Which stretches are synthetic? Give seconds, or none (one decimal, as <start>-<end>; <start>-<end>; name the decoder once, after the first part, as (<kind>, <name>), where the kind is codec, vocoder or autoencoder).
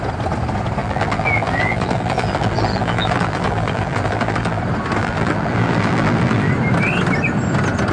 0.8-4.6 (vocoder, BigVGAN v2); 5.0-6.5